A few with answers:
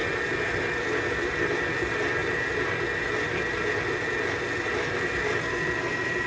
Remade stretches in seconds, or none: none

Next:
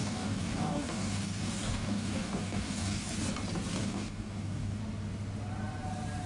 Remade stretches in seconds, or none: 0.0-3.1 (codec, DAC); 3.8-4.8